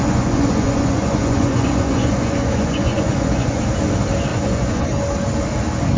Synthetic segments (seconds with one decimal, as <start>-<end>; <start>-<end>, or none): 0.0-3.6; 4.3-4.8